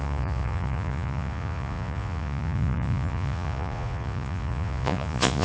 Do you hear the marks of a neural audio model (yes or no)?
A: yes